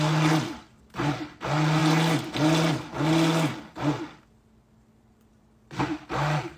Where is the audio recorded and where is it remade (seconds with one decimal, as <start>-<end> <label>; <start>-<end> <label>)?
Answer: 0.0-6.6 recorded